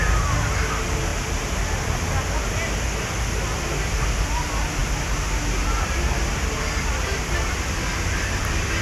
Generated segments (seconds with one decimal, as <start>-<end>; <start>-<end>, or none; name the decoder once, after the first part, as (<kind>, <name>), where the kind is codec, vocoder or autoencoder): none

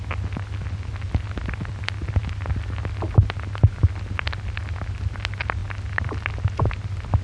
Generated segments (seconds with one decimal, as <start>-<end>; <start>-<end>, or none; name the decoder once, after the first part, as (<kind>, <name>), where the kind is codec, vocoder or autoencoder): none

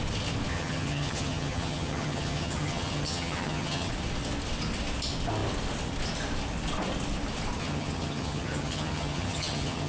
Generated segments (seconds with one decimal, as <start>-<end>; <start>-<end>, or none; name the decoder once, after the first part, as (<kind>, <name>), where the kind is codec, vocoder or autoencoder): 0.5-3.9 (vocoder, HiFi-GAN); 7.6-9.9

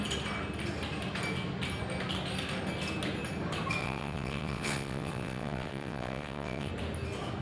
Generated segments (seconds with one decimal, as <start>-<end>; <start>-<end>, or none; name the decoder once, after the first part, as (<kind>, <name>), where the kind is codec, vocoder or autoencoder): 3.8-6.7 (vocoder, WaveNeXt)

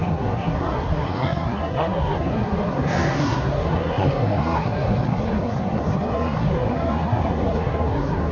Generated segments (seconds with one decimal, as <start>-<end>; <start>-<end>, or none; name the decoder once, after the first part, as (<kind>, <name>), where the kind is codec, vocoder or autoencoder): 0.0-8.3 (codec, SNAC)

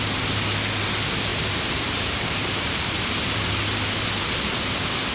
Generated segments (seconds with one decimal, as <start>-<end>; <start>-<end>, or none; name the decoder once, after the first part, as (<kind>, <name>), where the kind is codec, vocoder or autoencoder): 1.3-3.5 (vocoder, BigVGAN v2)